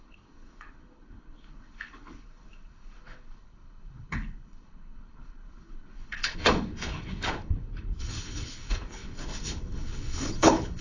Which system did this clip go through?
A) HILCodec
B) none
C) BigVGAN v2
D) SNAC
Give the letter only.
A